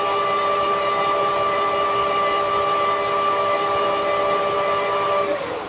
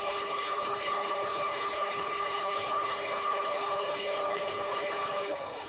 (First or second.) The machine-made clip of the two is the second